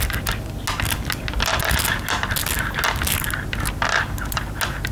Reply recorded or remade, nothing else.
recorded